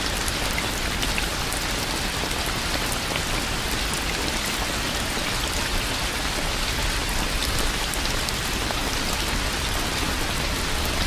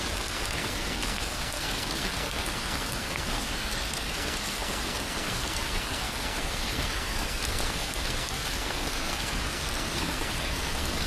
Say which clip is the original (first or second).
first